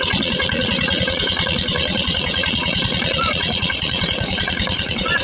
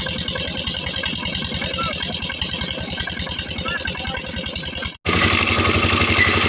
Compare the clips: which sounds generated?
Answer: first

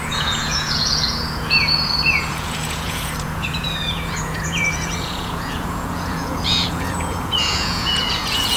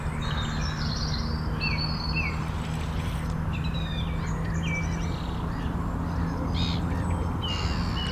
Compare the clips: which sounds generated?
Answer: first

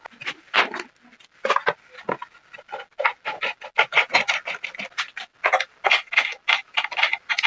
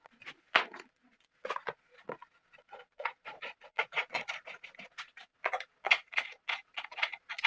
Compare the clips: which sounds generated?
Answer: second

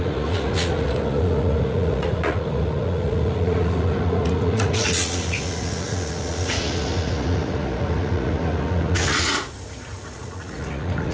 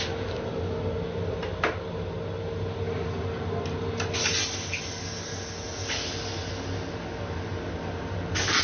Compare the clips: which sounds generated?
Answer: first